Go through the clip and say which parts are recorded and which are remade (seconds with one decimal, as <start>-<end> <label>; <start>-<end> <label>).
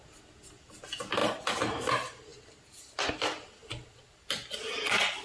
0.0-5.2 recorded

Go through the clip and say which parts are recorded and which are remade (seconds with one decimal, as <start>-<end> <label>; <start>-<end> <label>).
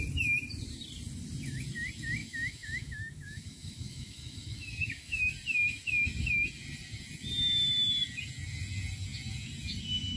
0.0-2.2 recorded; 2.2-5.3 remade; 5.3-10.2 recorded